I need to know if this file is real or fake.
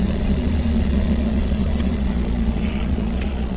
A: fake